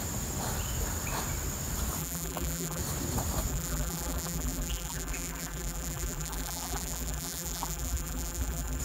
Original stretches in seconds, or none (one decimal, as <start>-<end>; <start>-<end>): 0.0-2.0; 2.8-3.5